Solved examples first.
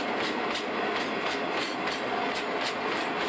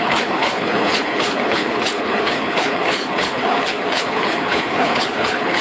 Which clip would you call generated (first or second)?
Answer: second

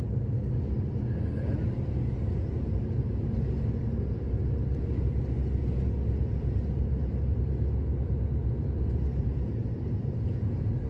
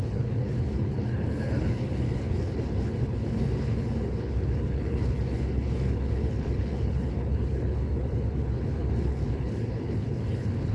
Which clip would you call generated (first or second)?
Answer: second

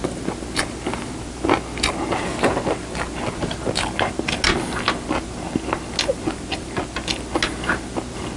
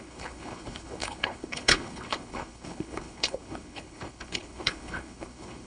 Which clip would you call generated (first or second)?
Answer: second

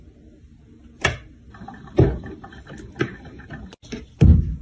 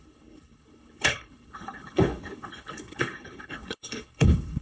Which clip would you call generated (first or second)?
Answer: second